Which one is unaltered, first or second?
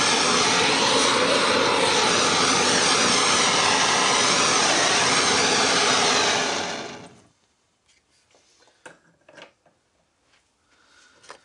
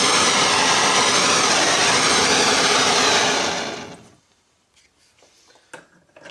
first